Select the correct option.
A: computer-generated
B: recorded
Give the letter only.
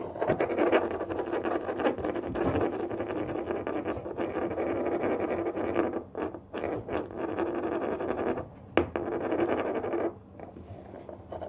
B